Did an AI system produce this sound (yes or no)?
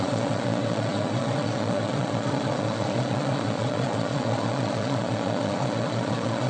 yes